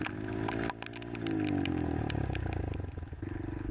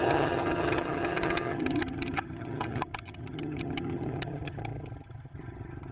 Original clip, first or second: first